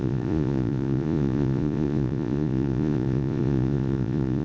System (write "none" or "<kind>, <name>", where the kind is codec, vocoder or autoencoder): vocoder, Vocos